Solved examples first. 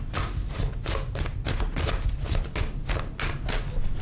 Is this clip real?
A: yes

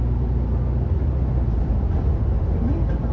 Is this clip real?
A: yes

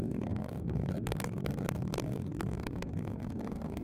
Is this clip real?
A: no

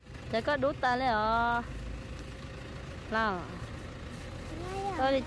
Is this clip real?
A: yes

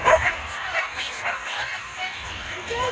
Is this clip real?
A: no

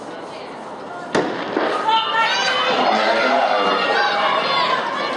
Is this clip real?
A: yes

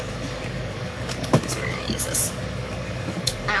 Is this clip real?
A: no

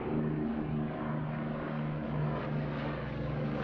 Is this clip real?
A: no